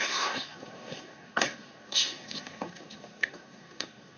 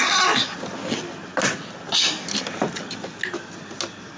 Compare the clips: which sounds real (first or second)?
second